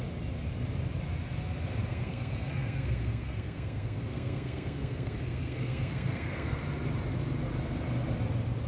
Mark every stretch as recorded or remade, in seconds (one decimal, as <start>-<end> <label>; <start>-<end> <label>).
0.0-1.9 recorded; 1.9-6.6 remade; 6.6-8.7 recorded